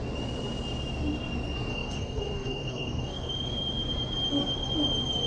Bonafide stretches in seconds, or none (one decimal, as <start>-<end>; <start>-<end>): 0.0-1.7; 3.3-5.3